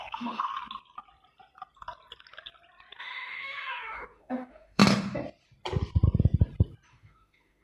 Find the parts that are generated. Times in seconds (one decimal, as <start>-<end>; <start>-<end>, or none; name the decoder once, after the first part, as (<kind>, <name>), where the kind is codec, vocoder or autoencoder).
0.0-0.5 (autoencoder, DAC-VAE); 3.0-4.8; 6.9-7.6